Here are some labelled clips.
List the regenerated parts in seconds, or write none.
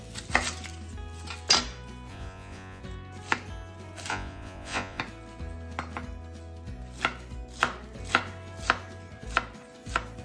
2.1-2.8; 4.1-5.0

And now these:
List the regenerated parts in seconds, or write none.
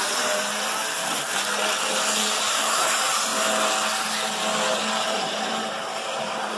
0.0-1.3; 2.2-3.3; 5.0-6.6